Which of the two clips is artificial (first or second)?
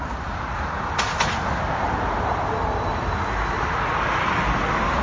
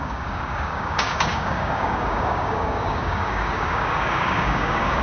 second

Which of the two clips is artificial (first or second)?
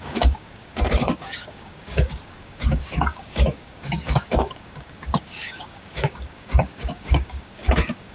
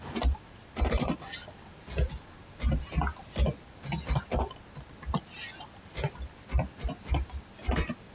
first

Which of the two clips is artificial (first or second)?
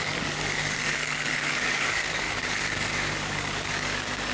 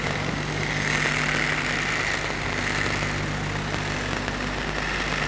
first